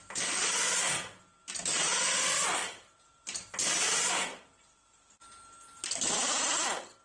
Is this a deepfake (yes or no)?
no